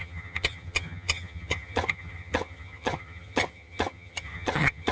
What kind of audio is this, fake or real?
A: fake